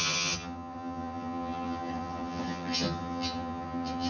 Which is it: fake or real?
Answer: fake